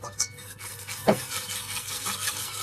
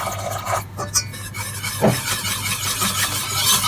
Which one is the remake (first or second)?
first